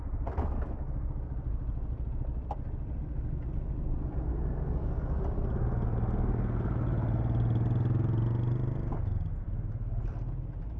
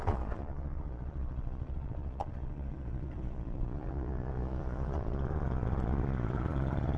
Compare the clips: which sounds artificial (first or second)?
second